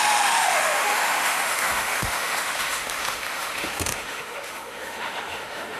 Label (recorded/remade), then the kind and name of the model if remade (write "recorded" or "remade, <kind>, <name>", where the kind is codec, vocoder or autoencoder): remade, autoencoder, DAC-VAE